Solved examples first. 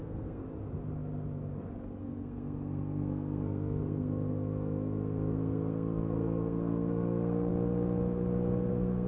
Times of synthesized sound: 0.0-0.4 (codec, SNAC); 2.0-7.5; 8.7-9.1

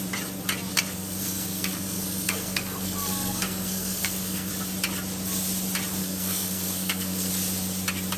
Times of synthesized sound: 0.7-4.5 (codec, SNAC); 6.0-7.3

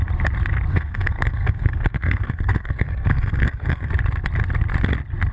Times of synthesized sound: 0.7-3.9 (codec, SNAC)